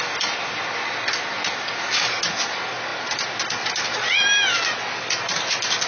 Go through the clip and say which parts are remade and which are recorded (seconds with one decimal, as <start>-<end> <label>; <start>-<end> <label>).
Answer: 0.0-5.9 recorded